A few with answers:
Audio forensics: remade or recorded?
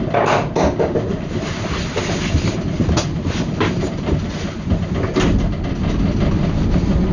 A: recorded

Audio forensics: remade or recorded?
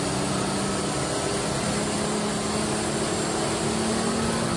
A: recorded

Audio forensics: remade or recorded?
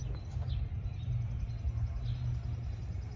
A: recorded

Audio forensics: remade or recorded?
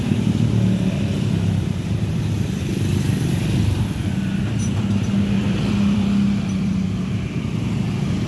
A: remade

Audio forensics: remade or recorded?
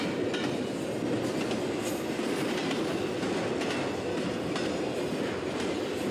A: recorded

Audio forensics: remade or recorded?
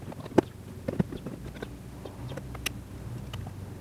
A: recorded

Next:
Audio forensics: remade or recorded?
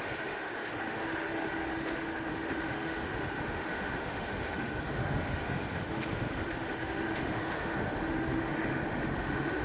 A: remade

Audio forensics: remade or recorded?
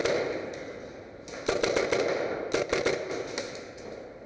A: recorded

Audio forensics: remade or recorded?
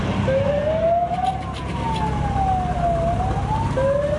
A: recorded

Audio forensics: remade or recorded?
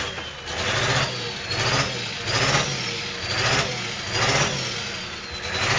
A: recorded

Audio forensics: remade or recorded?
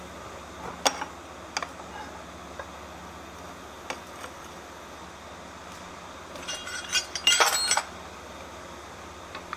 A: recorded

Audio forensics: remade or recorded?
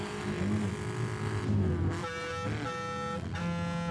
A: recorded